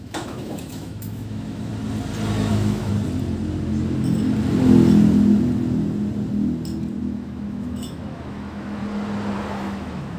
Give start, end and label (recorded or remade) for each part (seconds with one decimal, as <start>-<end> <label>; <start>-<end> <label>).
0.0-1.7 remade; 1.7-2.5 recorded; 2.5-2.9 remade; 2.9-7.0 recorded; 7.0-8.8 remade; 8.8-9.4 recorded; 9.4-10.2 remade